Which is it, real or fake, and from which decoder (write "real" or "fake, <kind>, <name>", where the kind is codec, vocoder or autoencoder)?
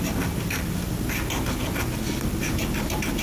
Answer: real